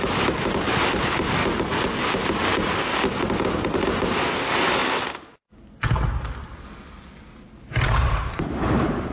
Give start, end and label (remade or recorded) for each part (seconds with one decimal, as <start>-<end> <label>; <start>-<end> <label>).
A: 0.0-1.4 remade; 1.4-2.0 recorded; 2.0-4.8 remade; 4.8-8.0 recorded; 8.0-9.1 remade